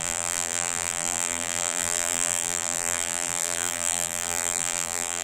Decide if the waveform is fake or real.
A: fake